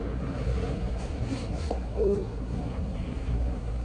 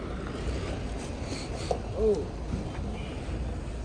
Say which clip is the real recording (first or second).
second